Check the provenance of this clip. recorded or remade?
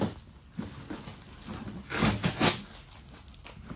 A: recorded